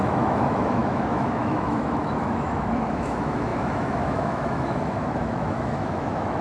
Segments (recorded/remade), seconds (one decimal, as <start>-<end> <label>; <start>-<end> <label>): 0.0-6.4 remade